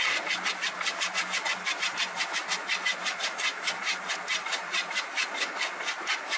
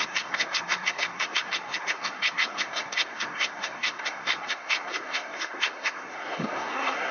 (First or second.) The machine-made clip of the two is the second